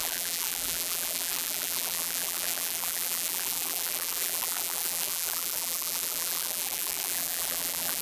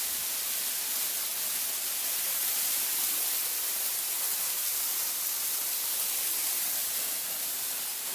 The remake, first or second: first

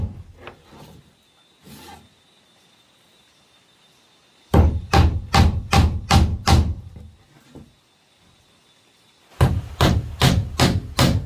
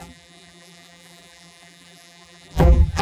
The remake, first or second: second